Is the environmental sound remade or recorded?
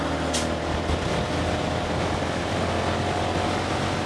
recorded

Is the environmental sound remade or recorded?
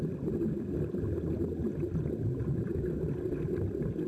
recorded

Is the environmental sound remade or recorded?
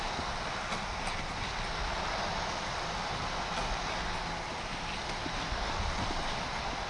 recorded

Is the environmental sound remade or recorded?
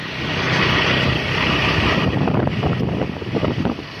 recorded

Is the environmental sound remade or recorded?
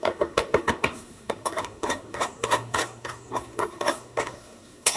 remade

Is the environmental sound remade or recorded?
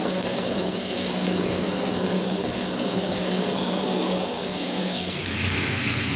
remade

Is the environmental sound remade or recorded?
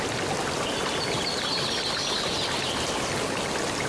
recorded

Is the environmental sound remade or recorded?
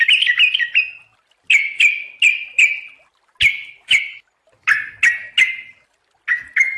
recorded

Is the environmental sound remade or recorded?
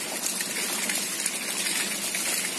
recorded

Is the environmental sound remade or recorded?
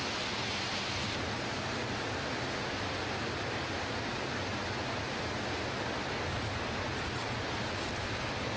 recorded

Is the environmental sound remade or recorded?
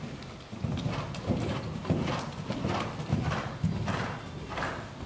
recorded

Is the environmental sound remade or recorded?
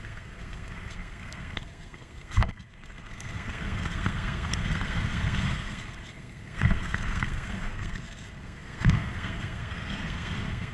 remade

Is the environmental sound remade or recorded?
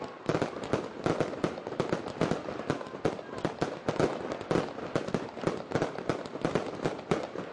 recorded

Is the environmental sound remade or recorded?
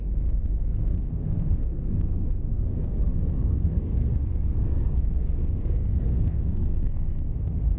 remade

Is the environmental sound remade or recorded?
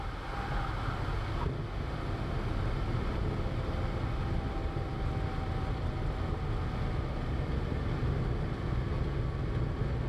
recorded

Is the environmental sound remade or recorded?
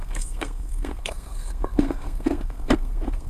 remade